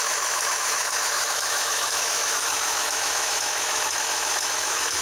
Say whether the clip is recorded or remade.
remade